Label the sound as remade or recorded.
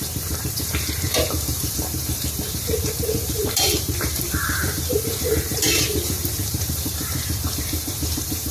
remade